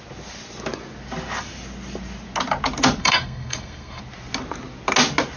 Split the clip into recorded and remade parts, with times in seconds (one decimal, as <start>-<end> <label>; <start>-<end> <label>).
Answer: 0.0-3.0 recorded; 3.0-4.0 remade; 4.0-5.4 recorded